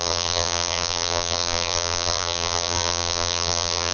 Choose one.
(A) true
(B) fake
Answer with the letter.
B